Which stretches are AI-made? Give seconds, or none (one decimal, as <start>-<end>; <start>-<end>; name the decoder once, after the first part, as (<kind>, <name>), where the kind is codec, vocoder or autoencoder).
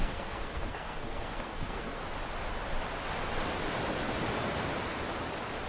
0.0-2.0 (codec, SNAC)